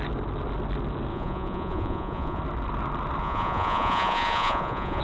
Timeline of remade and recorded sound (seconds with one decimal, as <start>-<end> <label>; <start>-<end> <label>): 0.0-1.1 recorded; 1.1-2.4 remade; 2.4-3.2 recorded; 3.2-5.0 remade